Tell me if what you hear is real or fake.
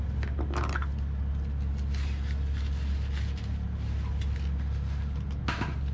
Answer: real